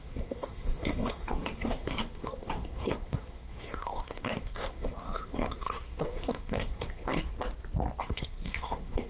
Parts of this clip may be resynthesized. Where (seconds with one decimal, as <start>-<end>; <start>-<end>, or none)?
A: 0.0-7.3; 8.0-9.1